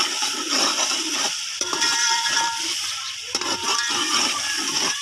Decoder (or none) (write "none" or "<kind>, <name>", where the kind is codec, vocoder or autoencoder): vocoder, BigVGAN v2